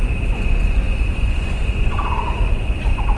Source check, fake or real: fake